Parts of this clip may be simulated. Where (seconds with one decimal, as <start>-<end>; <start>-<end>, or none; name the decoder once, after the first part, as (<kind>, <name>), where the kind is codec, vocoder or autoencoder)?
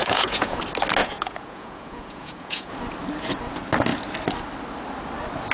0.0-0.6 (vocoder, Vocos); 1.0-2.7